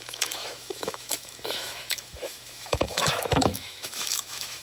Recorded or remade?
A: remade